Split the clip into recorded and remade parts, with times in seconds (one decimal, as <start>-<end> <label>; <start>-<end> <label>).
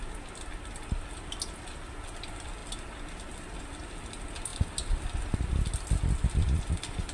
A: 0.0-4.5 recorded; 4.5-5.5 remade; 5.5-7.1 recorded